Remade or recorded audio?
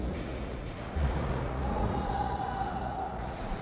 remade